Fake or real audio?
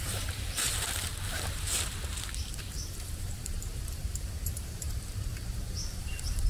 fake